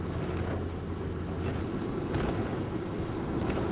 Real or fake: real